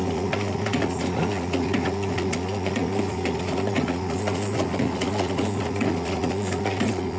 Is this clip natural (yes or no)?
no